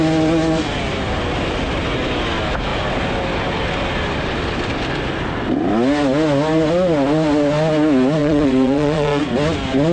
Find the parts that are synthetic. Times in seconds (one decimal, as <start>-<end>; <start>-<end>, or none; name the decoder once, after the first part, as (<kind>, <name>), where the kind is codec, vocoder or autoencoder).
8.2-9.2 (vocoder, Vocos)